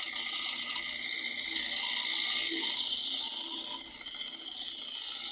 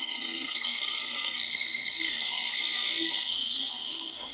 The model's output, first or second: second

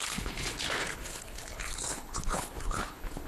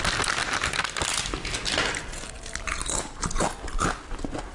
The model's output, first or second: first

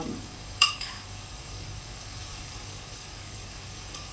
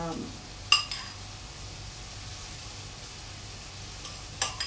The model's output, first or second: first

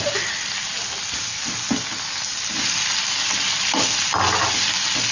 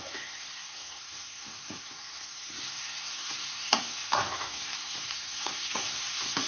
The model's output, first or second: second